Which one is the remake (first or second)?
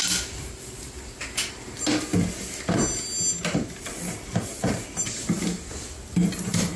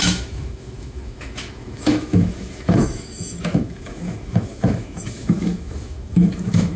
second